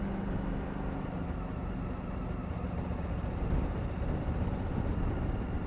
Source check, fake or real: real